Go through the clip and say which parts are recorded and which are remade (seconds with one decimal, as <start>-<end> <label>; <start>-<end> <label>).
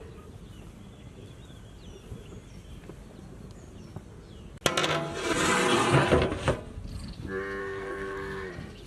0.0-7.6 recorded; 7.6-8.5 remade; 8.5-8.9 recorded